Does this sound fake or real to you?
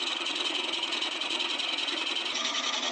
fake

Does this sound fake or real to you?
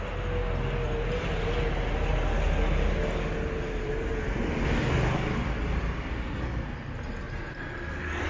real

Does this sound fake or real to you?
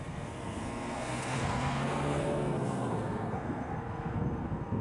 fake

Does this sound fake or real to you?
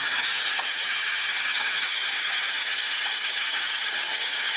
fake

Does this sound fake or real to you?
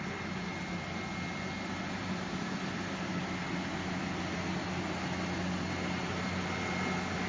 real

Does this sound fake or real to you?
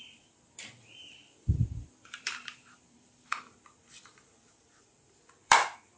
fake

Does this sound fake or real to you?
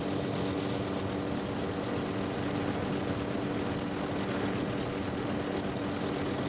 real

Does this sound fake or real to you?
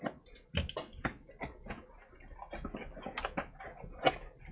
real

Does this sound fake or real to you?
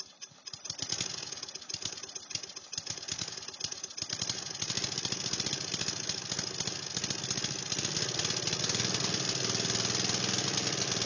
real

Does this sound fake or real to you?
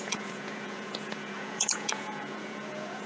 fake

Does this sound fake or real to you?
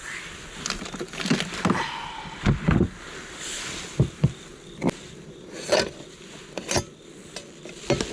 real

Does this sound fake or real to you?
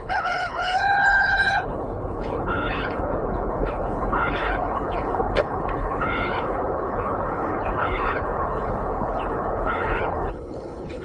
fake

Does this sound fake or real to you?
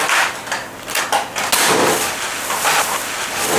real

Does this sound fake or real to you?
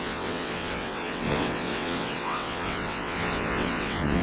fake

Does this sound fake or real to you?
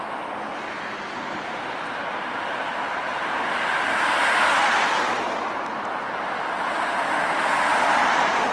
real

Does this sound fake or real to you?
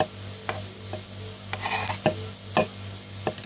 real